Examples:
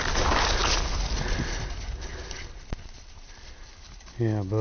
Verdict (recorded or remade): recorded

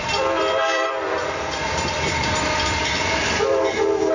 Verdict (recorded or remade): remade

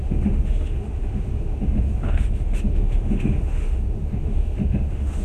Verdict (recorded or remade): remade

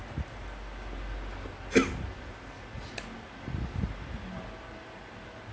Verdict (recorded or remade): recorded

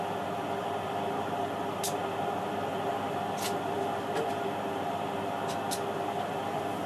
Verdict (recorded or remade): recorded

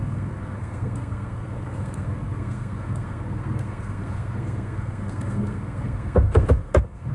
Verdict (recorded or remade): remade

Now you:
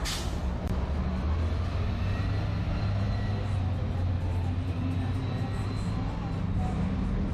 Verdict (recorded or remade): recorded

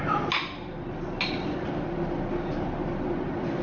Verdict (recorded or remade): recorded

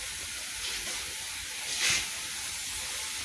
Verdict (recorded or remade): recorded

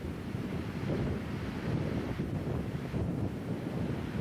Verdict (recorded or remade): remade